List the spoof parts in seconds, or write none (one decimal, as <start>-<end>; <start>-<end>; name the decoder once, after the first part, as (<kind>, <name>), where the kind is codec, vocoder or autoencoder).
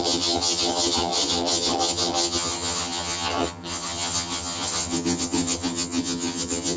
0.0-6.8 (vocoder, HiFi-GAN)